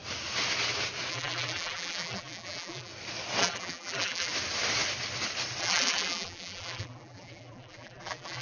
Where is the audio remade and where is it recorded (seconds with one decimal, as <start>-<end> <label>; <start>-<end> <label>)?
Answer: 0.0-1.1 recorded; 1.1-2.9 remade; 2.9-3.4 recorded; 3.4-4.3 remade; 4.3-5.6 recorded; 5.6-8.4 remade